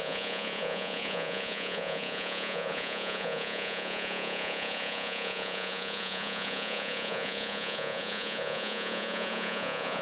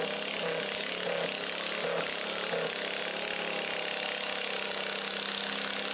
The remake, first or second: first